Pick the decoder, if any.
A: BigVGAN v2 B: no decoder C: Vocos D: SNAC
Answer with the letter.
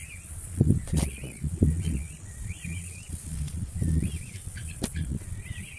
C